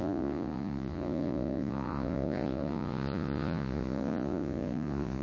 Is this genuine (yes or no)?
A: no